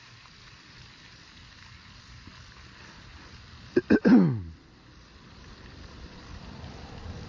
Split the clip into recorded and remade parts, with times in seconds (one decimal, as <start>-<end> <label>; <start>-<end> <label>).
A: 0.0-2.3 remade; 2.3-5.5 recorded; 5.5-7.3 remade